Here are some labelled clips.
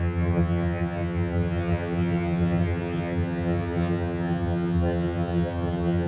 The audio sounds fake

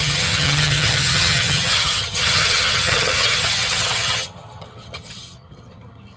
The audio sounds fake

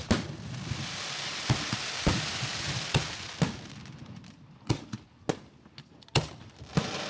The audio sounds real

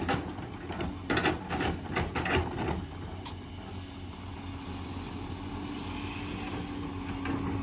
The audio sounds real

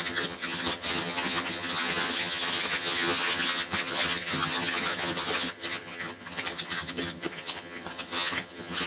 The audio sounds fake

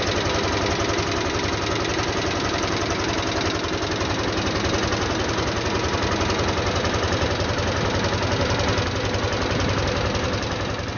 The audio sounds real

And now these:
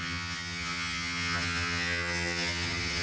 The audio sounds fake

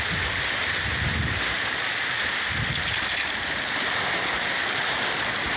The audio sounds real